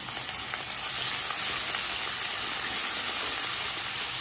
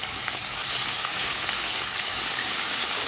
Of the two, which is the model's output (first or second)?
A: second